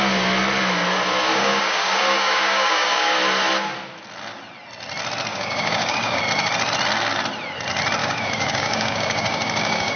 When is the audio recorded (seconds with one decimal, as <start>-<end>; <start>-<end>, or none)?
0.0-1.3; 3.2-5.3; 6.2-8.0